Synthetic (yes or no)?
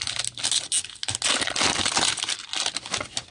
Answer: no